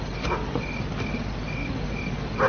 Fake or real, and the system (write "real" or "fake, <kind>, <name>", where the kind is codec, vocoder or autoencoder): real